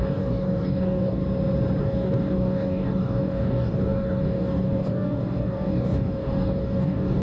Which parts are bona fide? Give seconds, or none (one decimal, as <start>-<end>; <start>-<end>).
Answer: 1.2-1.8